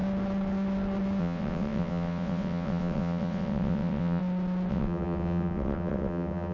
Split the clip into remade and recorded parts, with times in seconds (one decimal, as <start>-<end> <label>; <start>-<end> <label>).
0.0-1.2 recorded; 1.2-4.2 remade; 4.2-4.7 recorded; 4.7-6.5 remade